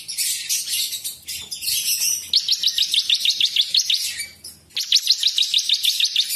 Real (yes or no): yes